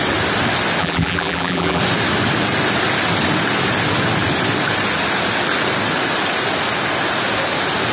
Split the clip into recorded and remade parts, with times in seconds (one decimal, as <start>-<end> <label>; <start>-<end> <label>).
0.0-0.8 recorded; 0.8-1.8 remade; 1.8-7.9 recorded